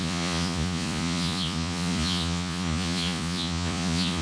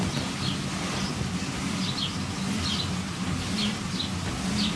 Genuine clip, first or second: second